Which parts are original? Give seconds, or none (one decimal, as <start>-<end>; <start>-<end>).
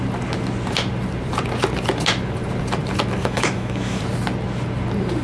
0.0-3.2; 4.0-5.2